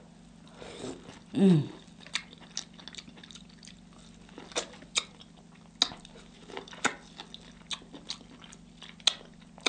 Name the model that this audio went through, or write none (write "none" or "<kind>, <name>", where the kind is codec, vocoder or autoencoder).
none